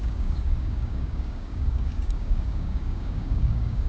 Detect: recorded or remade remade